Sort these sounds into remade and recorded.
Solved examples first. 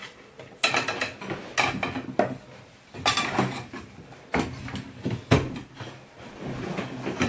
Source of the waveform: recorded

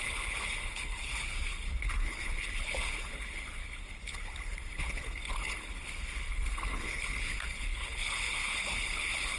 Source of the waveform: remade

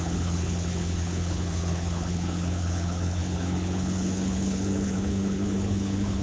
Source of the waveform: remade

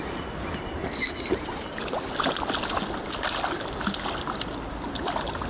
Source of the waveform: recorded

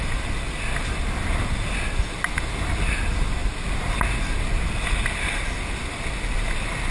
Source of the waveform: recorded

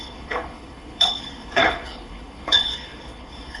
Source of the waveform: remade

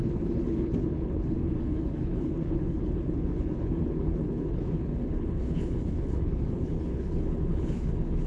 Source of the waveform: remade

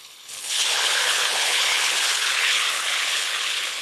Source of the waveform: remade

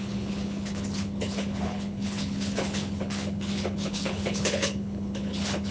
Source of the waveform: remade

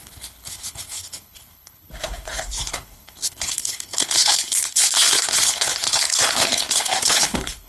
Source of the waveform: remade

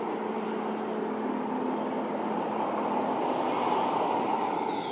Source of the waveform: recorded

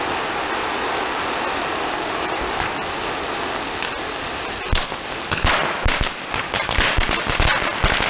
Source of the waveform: recorded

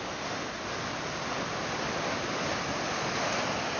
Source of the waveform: recorded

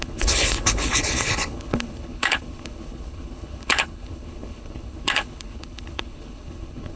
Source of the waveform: remade